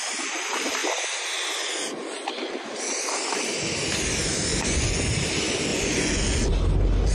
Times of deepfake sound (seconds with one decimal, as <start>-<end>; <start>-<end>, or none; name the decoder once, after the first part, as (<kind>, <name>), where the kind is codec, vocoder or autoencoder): 4.5-5.1 (vocoder, Vocos); 5.7-6.5